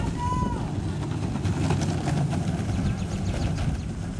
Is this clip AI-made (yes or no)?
no